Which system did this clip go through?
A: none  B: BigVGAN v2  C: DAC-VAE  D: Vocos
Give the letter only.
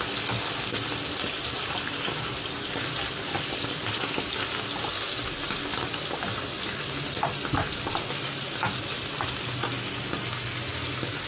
A